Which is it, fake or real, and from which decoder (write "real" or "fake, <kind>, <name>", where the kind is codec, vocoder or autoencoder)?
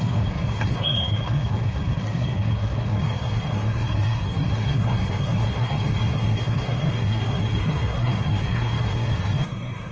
fake, codec, SNAC